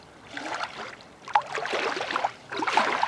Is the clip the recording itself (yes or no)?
yes